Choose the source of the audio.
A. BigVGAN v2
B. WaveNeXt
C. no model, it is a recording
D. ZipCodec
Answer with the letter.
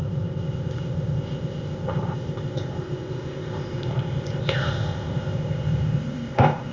D